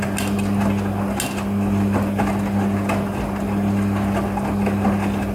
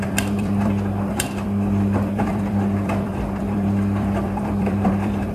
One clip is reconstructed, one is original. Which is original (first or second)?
first